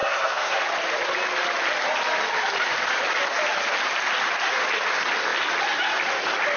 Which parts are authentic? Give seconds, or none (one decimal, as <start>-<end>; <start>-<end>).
0.7-6.6